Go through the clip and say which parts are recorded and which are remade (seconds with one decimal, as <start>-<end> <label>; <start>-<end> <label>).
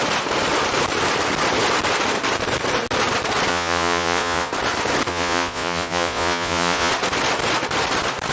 0.0-3.5 recorded; 3.5-4.5 remade; 4.5-5.1 recorded; 5.1-6.9 remade; 6.9-8.3 recorded